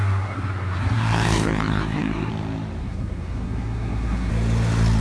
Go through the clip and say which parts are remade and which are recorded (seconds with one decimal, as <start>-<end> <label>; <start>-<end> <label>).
0.0-2.3 remade; 2.3-2.8 recorded; 2.8-4.3 remade; 4.3-5.0 recorded